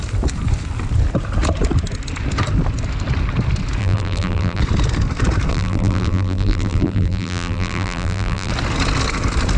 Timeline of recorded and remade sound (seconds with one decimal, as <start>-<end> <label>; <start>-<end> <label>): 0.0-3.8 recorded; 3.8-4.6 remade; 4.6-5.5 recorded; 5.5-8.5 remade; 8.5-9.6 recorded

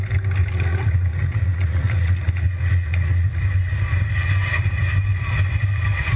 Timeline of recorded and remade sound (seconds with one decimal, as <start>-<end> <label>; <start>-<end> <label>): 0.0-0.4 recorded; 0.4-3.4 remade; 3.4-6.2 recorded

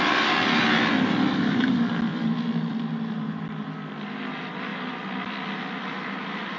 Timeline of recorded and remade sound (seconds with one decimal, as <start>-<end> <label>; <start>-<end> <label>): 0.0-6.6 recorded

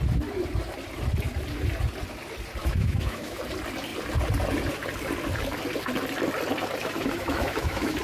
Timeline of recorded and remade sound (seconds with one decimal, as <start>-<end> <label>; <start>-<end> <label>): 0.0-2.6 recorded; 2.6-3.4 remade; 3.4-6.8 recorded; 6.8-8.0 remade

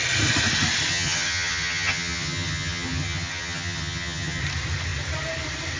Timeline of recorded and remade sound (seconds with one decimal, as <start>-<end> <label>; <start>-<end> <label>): 0.0-0.9 recorded; 0.9-4.4 remade; 4.4-5.8 recorded

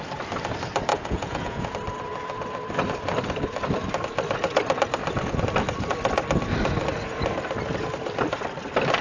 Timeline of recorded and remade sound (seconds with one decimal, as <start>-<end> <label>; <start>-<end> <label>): 0.0-0.9 recorded; 0.9-1.7 remade; 1.7-9.0 recorded